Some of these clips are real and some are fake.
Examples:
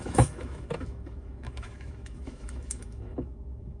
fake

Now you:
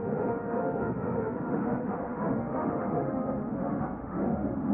fake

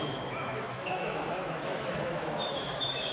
fake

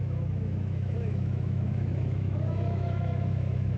fake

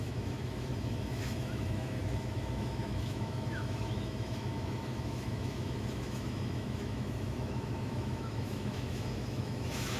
fake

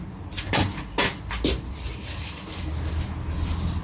real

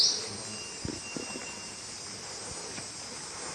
real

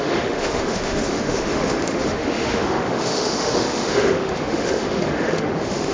fake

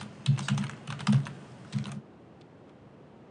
real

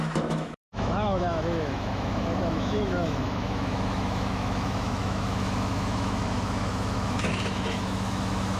fake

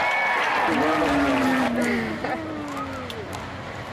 real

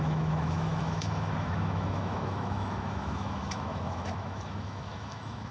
fake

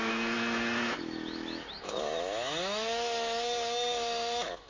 fake